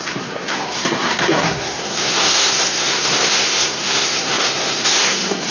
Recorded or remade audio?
remade